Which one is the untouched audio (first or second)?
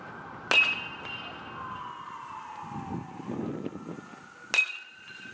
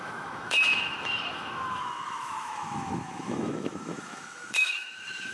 first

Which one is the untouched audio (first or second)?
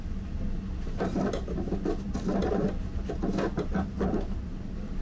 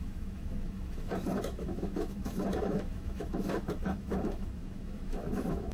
first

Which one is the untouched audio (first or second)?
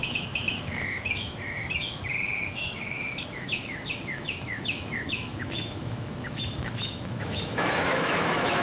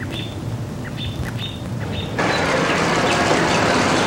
second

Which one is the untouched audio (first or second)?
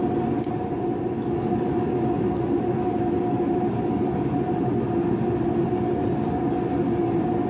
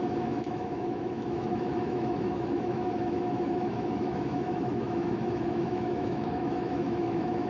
first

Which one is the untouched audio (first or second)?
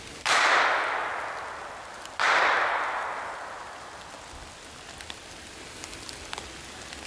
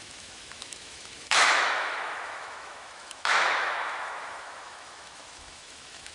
first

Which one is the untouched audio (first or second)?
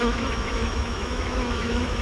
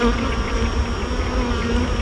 second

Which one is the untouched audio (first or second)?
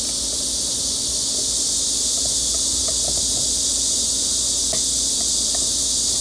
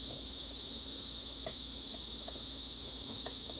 first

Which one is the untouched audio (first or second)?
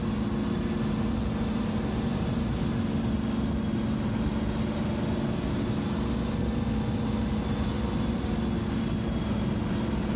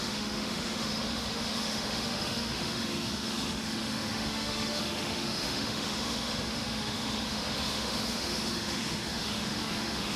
first